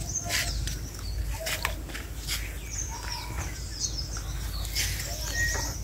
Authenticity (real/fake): real